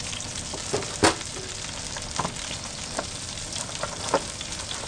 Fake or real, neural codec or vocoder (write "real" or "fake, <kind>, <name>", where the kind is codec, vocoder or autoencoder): fake, vocoder, BigVGAN v2